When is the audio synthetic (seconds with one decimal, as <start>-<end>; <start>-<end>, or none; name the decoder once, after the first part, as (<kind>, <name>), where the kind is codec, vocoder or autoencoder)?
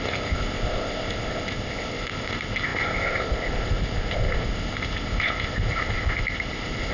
0.0-6.9 (codec, ZipCodec)